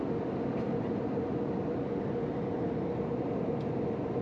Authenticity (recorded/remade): recorded